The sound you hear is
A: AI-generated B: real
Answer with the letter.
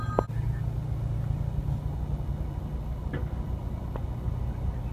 B